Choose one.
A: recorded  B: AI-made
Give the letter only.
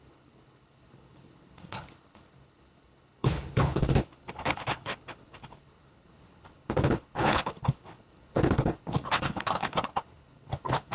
B